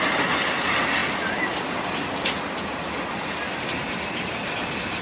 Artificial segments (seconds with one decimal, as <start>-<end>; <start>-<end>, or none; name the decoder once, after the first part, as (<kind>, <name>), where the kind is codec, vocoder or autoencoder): none